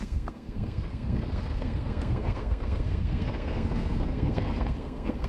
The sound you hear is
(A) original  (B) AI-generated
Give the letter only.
B